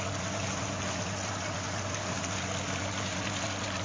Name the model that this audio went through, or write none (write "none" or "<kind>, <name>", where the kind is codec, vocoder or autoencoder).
none